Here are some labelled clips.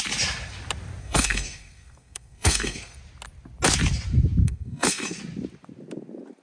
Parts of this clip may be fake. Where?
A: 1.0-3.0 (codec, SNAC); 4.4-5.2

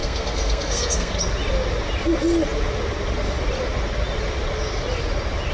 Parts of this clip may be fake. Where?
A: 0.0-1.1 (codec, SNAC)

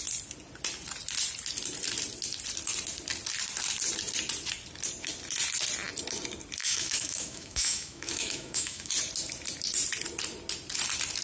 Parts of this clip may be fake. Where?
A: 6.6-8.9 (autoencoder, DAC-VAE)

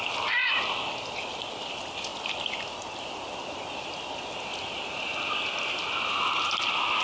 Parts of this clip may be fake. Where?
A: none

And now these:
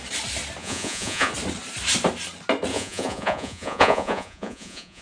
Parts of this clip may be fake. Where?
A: 0.6-1.3 (vocoder, Vocos); 2.7-5.0